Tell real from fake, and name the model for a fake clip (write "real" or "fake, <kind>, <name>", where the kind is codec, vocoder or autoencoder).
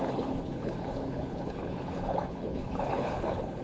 fake, codec, HILCodec